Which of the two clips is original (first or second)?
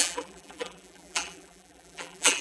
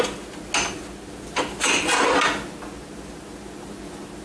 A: second